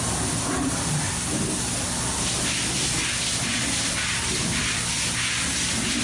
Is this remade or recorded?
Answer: recorded